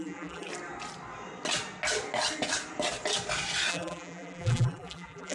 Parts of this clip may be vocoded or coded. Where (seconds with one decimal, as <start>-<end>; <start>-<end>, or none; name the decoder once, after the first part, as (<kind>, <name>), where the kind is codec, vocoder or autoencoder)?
0.0-0.5 (vocoder, BigVGAN v2); 3.7-5.3